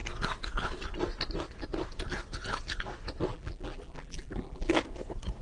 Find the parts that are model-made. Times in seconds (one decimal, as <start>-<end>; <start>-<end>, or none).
3.3-4.7